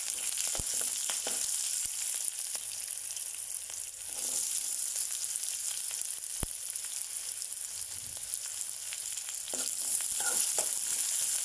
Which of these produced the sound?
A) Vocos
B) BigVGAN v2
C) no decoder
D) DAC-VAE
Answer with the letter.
C